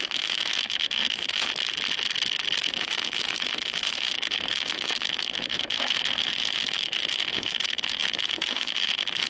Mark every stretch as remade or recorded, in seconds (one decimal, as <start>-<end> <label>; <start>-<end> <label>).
0.0-1.5 remade; 1.5-2.7 recorded; 2.7-9.3 remade